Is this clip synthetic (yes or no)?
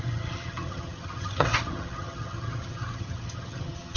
yes